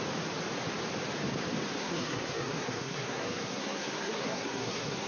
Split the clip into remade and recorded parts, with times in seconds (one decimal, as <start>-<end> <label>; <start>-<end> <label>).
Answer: 0.0-1.8 recorded; 1.8-5.1 remade